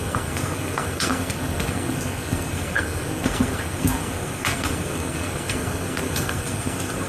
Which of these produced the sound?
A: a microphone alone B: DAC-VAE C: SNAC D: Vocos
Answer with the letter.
C